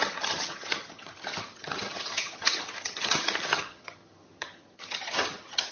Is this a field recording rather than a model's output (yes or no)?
no